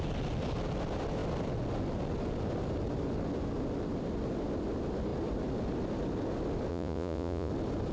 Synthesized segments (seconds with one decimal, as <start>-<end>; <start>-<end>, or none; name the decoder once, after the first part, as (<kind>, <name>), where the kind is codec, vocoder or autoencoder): 6.7-7.5 (vocoder, Vocos)

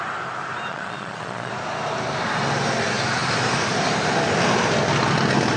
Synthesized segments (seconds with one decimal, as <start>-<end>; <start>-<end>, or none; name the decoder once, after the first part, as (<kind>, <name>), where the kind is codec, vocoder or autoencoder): 0.7-1.5 (vocoder, Vocos)